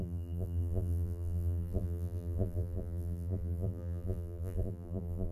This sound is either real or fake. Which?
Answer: fake